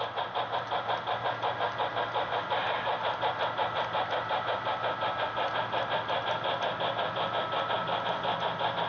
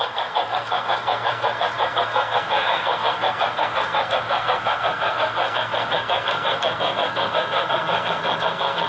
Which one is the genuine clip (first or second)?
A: first